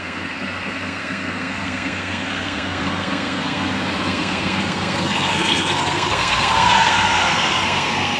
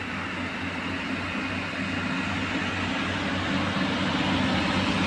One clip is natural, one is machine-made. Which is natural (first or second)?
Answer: second